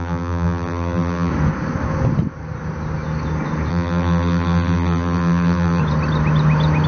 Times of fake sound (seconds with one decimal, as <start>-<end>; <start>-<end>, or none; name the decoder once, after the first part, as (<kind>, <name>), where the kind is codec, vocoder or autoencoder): 0.0-1.3 (vocoder, BigVGAN v2); 3.7-5.8